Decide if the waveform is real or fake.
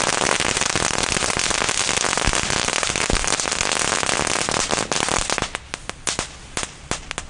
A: real